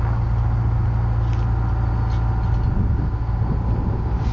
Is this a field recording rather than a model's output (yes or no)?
yes